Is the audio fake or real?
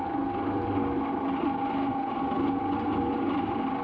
real